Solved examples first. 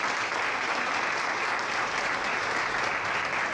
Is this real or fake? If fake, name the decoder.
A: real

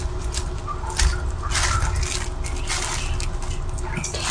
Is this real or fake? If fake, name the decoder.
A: real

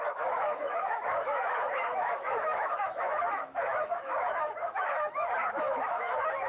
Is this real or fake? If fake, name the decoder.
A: fake, autoencoder, DAC-VAE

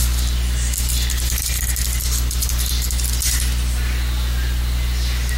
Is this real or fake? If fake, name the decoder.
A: real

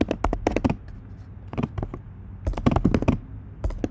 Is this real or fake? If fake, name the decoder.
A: real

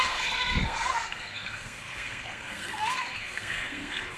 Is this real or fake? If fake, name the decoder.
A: fake, codec, SNAC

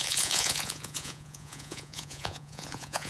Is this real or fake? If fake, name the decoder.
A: fake, vocoder, Vocos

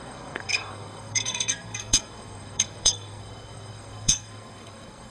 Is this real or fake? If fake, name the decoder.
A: fake, codec, SNAC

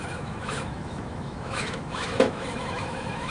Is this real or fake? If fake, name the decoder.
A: fake, autoencoder, DAC-VAE